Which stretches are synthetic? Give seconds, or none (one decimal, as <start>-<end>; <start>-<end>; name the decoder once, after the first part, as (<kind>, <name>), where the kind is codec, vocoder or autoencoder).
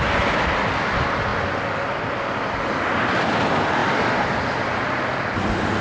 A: none